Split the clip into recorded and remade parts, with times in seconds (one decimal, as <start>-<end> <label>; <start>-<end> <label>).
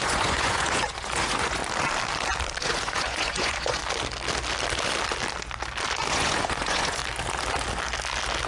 0.0-1.6 remade; 1.6-2.6 recorded; 2.6-3.8 remade; 3.8-6.1 recorded; 6.1-7.0 remade; 7.0-8.5 recorded